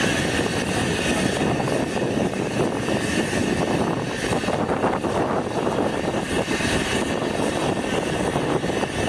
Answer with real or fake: real